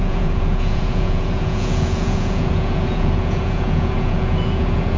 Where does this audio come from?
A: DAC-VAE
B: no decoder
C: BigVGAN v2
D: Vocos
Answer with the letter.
D